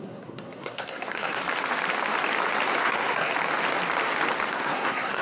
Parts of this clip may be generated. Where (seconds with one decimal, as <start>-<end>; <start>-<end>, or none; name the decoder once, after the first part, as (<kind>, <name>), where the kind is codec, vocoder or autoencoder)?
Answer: 0.0-1.4 (codec, SNAC); 2.8-3.3; 4.5-5.2

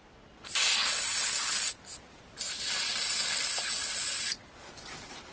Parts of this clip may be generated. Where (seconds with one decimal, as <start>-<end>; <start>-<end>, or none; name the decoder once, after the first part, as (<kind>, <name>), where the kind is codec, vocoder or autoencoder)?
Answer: none

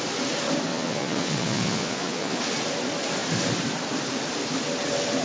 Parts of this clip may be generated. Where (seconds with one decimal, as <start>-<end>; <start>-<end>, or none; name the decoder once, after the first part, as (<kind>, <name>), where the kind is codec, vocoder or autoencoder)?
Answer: 0.7-2.4 (vocoder, Vocos)

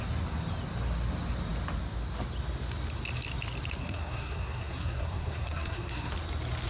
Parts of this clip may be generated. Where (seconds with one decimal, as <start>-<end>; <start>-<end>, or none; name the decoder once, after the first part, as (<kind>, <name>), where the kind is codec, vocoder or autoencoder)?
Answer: 3.8-6.1 (codec, SNAC)

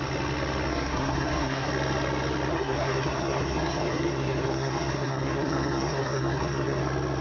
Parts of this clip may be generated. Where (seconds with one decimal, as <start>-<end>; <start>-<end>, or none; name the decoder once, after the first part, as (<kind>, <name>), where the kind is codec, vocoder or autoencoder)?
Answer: 0.7-1.7 (codec, SNAC); 2.5-6.8

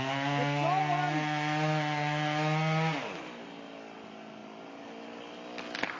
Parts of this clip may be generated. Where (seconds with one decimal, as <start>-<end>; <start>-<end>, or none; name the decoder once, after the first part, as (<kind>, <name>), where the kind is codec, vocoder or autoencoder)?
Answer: none

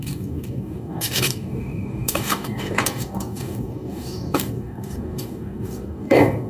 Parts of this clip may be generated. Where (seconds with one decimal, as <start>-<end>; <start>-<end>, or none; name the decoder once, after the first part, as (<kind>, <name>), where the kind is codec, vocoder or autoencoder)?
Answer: 0.0-6.5 (codec, DAC)